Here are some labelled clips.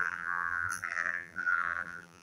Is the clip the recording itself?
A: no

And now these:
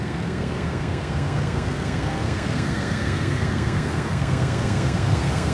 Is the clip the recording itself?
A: no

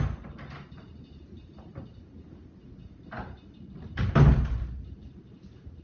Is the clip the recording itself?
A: yes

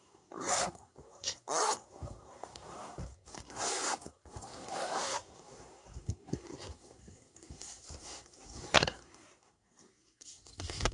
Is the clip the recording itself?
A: no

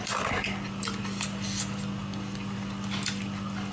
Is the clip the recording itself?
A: yes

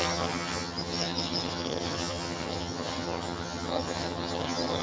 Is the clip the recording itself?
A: no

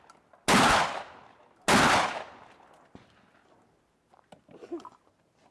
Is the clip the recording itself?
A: yes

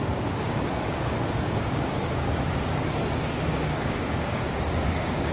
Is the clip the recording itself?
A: no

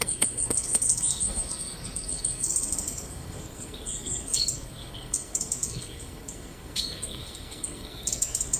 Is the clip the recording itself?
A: no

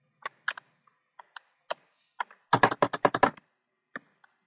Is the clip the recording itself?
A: yes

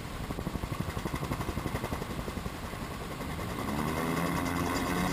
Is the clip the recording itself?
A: yes